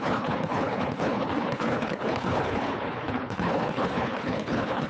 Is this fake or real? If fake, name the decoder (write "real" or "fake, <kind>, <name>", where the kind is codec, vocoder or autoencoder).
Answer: fake, codec, HILCodec